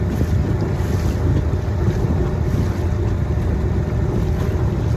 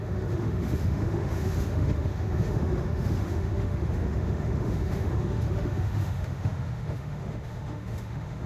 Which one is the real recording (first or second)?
first